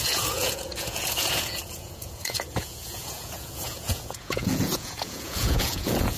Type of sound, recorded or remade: remade